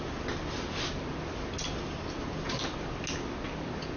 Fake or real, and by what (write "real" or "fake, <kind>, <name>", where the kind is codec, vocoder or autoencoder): real